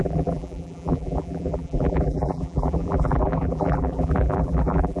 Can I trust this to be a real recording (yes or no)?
no